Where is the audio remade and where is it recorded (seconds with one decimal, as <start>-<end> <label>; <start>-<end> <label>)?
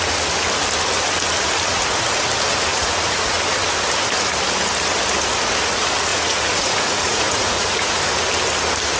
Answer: 0.0-2.7 recorded; 2.7-3.4 remade; 3.4-6.1 recorded; 6.1-8.0 remade; 8.0-9.0 recorded